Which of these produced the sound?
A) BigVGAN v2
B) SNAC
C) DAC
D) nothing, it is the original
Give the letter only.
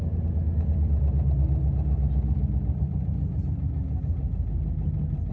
D